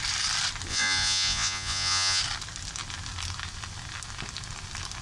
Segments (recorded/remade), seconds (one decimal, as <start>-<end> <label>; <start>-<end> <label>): 0.0-0.7 recorded; 0.7-2.2 remade; 2.2-5.0 recorded